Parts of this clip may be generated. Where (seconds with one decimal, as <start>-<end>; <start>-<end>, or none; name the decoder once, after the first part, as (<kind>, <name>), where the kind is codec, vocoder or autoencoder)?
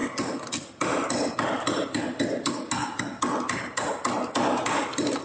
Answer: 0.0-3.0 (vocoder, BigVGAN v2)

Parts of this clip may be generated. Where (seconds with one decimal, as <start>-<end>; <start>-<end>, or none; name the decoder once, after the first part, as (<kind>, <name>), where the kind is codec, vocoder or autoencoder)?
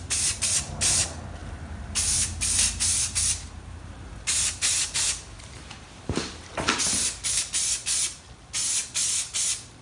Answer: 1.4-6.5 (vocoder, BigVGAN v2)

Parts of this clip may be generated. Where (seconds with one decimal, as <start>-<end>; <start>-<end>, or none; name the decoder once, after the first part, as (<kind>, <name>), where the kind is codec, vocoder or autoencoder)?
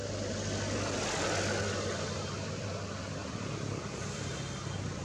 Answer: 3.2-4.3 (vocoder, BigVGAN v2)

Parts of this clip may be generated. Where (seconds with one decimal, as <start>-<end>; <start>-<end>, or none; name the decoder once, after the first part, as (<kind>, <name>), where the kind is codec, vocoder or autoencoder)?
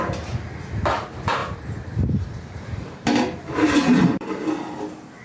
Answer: 1.4-4.5 (vocoder, BigVGAN v2)